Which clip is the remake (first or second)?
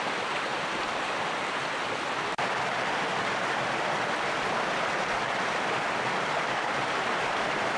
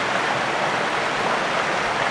first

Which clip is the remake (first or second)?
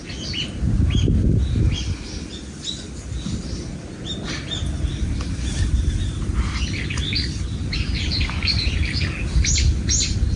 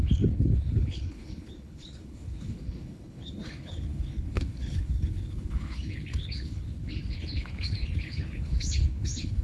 second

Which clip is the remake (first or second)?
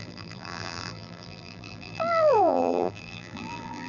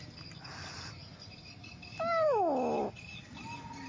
first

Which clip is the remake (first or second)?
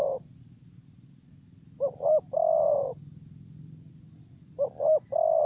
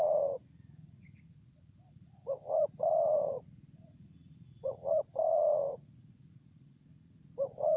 second